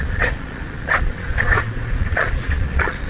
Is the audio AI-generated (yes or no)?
yes